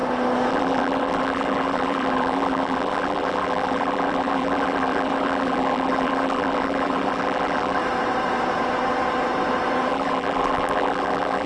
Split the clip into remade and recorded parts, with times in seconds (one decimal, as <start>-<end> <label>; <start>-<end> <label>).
0.0-0.5 recorded; 0.5-7.8 remade; 7.8-9.9 recorded; 9.9-11.5 remade